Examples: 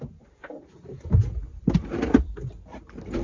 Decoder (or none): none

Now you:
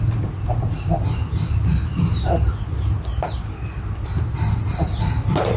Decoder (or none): none